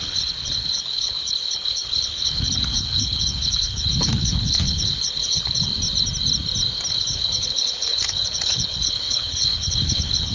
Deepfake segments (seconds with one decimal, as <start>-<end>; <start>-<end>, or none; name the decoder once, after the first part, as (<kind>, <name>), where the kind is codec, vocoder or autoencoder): 0.0-5.7 (codec, HILCodec); 6.9-10.3